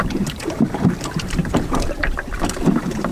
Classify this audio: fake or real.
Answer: fake